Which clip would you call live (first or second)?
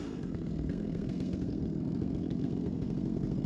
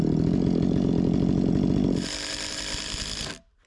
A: second